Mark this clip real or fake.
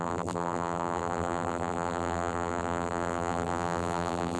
fake